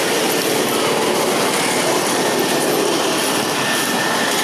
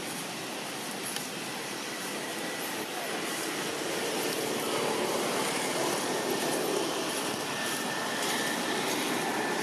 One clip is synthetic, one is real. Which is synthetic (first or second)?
second